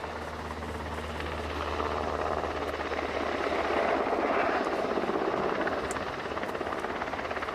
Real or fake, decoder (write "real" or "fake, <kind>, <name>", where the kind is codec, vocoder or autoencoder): real